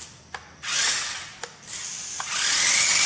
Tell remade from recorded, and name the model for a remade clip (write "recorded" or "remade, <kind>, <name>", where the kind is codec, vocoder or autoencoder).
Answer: recorded